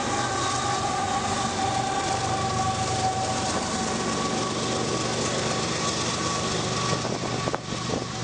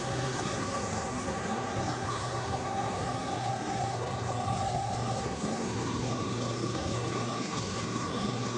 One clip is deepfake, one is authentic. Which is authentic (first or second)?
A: first